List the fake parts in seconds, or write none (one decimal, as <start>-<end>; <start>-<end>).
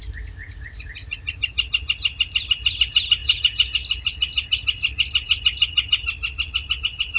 none